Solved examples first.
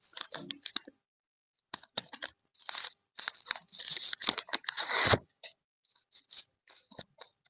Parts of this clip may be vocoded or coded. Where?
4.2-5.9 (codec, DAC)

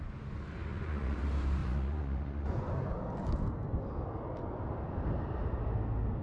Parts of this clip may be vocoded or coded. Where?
0.7-1.2 (vocoder, Vocos); 1.6-2.7

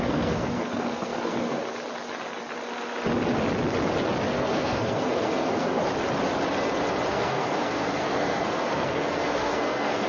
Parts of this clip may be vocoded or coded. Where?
0.0-1.6 (codec, SNAC); 4.3-5.8; 7.1-10.1

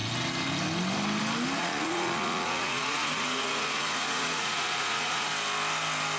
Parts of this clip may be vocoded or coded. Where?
1.6-5.3 (vocoder, Vocos)

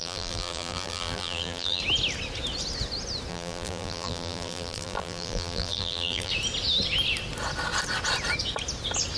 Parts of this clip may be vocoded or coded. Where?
0.0-1.8 (vocoder, BigVGAN v2); 3.3-6.3